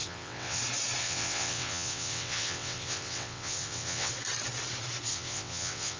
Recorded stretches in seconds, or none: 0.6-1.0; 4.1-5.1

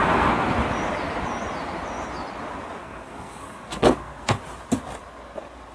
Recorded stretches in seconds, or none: 0.5-2.8; 4.4-5.7

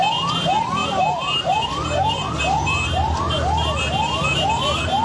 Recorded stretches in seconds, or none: 0.0-0.8; 3.8-5.0

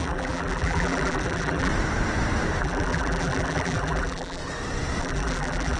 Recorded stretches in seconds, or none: 1.7-2.6; 4.4-5.0